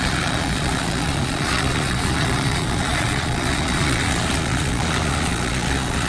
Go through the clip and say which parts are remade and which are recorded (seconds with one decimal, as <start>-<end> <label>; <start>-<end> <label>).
0.0-6.1 remade